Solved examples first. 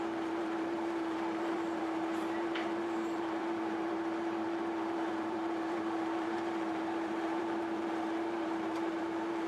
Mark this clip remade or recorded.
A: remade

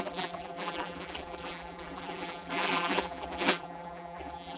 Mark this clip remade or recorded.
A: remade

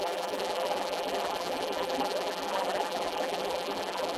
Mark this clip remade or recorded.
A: remade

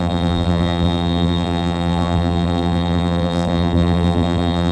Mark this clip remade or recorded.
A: remade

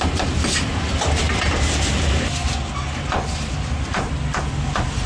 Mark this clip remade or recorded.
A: recorded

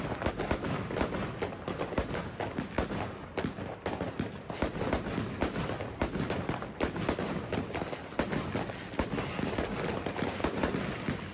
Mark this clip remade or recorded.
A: recorded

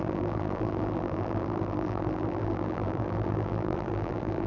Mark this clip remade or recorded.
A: remade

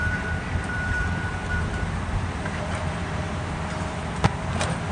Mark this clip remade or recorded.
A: remade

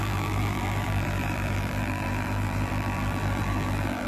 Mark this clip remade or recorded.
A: remade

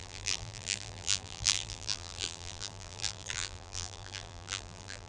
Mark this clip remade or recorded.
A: remade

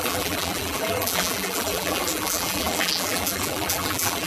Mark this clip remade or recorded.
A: remade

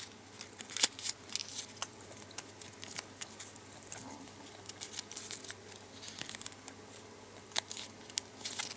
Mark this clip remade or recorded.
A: recorded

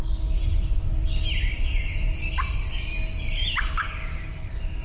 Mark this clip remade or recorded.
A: recorded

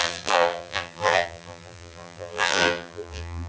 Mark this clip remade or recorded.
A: remade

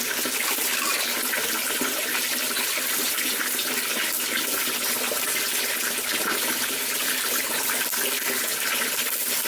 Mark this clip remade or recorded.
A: recorded